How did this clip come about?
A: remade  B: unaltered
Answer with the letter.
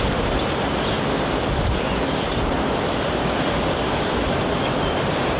B